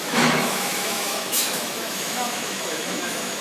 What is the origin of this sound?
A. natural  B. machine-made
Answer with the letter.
B